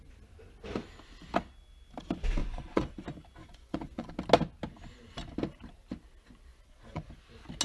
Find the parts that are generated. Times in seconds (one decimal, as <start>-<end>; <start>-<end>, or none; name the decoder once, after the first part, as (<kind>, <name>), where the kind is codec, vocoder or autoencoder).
2.4-2.9 (vocoder, Vocos); 3.4-4.1; 6.5-7.1